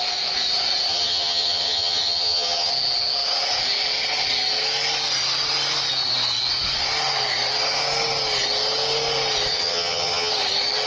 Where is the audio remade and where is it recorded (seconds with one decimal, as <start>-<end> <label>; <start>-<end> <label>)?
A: 0.0-0.9 recorded; 0.9-2.7 remade; 2.7-9.5 recorded; 9.5-10.3 remade; 10.3-10.9 recorded